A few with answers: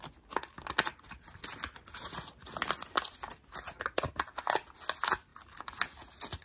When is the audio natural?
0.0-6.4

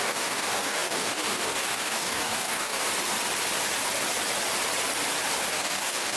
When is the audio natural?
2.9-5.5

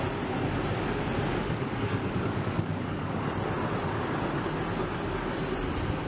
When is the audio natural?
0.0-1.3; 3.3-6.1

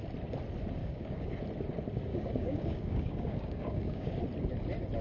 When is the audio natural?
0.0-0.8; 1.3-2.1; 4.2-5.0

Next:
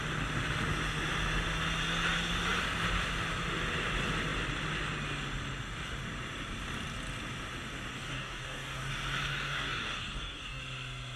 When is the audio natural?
0.0-7.9; 8.9-9.3; 10.6-11.2

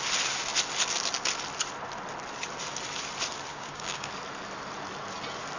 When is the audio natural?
0.0-3.5; 4.1-5.6

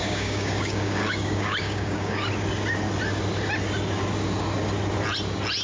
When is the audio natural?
2.3-5.6

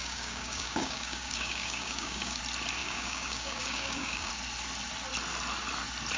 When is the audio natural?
2.4-2.8; 4.3-6.2